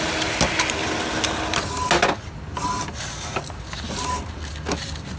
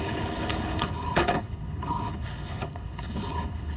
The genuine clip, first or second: first